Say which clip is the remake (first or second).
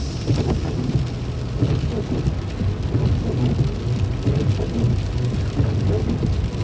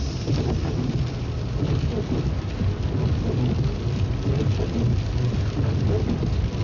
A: second